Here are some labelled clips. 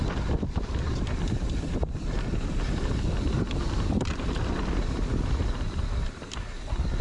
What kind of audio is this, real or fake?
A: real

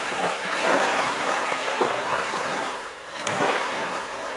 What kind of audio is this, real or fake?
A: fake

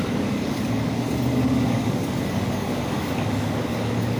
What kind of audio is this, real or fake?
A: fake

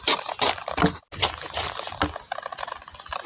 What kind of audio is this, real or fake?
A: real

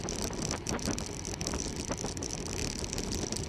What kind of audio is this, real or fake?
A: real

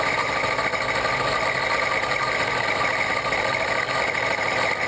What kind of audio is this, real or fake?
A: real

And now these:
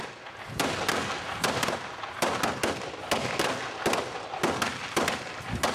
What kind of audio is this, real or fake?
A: real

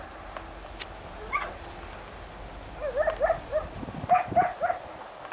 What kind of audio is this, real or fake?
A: real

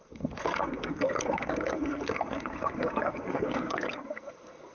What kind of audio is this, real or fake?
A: fake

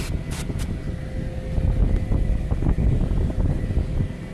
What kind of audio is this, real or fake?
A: real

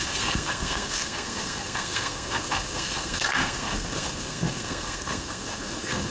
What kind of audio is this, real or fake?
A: fake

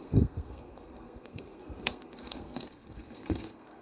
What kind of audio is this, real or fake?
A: fake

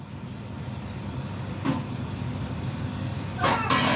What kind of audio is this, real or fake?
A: real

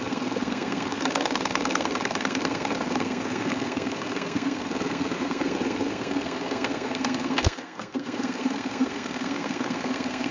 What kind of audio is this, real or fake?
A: fake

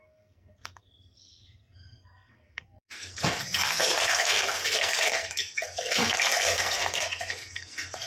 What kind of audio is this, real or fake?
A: fake